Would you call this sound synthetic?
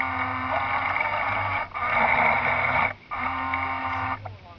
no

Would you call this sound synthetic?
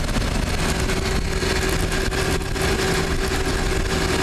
no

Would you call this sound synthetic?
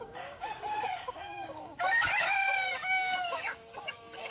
yes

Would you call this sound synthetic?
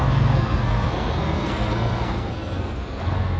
yes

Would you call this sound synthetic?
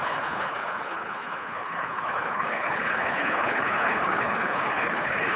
yes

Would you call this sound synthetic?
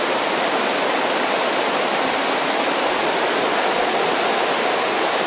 no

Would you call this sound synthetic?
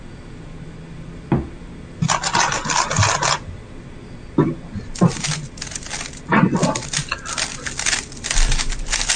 no